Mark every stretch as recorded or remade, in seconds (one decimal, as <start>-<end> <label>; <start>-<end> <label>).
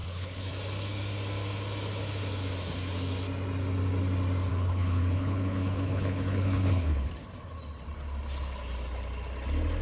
0.0-0.5 remade; 0.5-4.5 recorded; 4.5-7.1 remade; 7.1-9.8 recorded